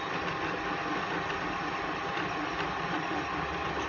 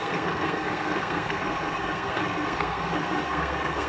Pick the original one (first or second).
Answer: first